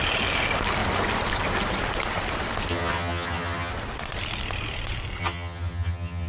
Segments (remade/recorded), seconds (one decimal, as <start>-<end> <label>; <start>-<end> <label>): 0.0-2.7 recorded; 2.7-3.7 remade; 3.7-5.2 recorded; 5.2-6.3 remade